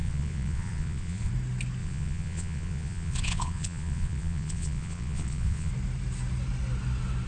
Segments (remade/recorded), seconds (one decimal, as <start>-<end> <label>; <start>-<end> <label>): 0.0-1.3 remade; 1.3-1.8 recorded; 1.8-5.7 remade; 5.7-7.3 recorded